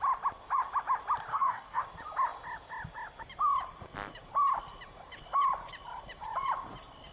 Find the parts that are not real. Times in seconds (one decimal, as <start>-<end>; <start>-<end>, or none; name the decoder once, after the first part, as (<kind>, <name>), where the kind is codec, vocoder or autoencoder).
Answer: 1.3-1.8 (codec, DAC)